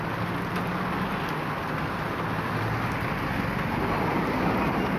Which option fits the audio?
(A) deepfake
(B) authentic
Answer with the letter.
B